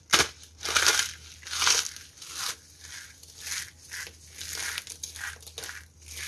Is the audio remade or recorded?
recorded